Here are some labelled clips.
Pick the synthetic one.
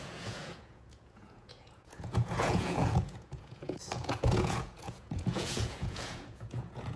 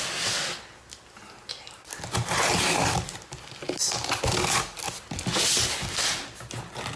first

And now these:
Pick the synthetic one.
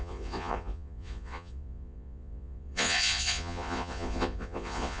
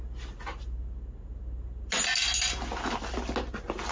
first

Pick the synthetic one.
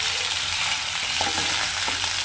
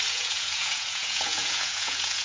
second